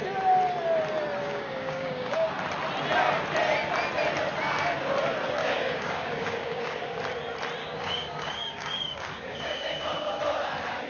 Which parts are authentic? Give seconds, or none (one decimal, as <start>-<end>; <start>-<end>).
0.0-1.2; 2.3-5.4; 7.0-7.6; 10.2-10.9